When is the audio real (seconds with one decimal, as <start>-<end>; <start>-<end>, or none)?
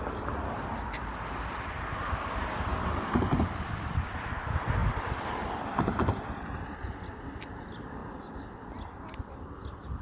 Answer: 0.0-10.0